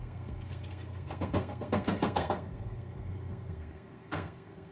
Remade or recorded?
remade